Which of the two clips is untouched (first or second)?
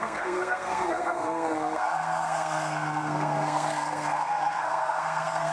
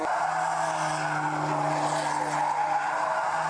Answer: second